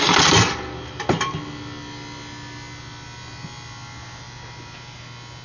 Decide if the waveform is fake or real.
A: real